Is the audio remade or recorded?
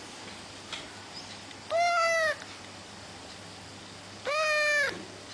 recorded